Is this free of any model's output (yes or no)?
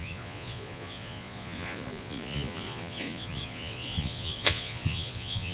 no